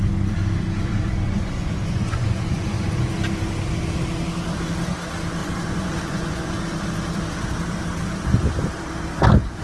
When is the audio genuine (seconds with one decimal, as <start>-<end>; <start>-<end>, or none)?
0.0-0.8; 3.1-5.4; 6.6-9.6